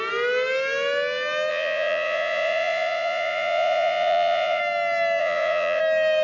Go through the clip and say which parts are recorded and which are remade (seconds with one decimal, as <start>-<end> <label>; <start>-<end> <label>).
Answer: 0.0-1.5 recorded; 1.5-4.6 remade; 4.6-5.2 recorded; 5.2-5.8 remade; 5.8-6.2 recorded